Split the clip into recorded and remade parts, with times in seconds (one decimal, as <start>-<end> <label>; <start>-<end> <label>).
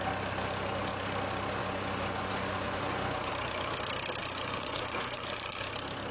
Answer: 0.0-1.6 recorded; 1.6-3.3 remade; 3.3-4.2 recorded; 4.2-5.6 remade; 5.6-6.1 recorded